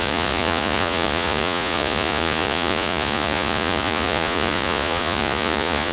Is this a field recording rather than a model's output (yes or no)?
no